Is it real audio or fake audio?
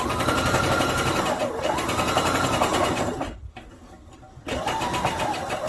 real